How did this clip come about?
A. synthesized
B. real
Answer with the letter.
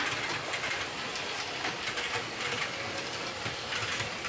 B